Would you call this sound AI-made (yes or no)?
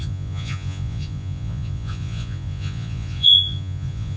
yes